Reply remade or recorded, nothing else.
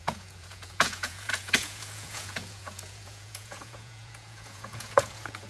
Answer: remade